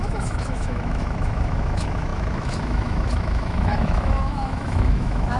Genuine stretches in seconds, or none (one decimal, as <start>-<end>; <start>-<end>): none